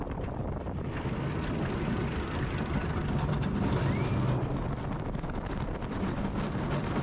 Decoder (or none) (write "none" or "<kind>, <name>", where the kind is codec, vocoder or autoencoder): vocoder, BigVGAN v2